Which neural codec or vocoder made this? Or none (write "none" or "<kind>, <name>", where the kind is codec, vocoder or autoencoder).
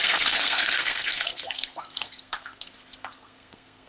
codec, SNAC